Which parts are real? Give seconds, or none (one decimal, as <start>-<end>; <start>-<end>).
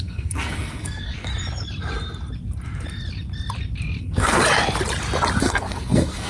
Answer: 1.3-4.0; 4.4-5.4